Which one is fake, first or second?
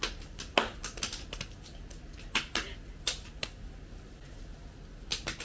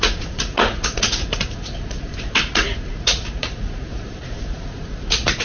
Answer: second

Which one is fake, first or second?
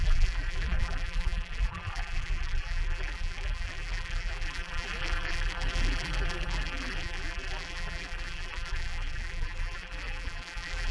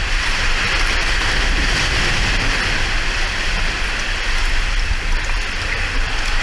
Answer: first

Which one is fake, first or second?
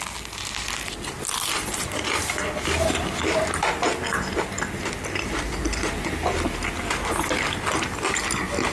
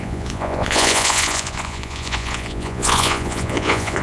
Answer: second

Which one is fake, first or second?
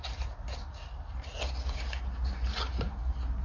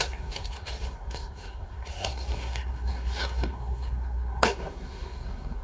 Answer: second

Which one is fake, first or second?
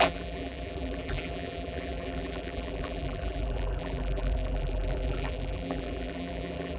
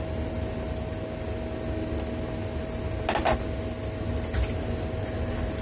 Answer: first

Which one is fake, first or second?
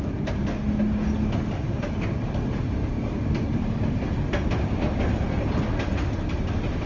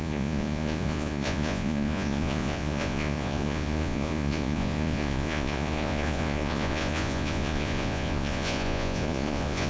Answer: second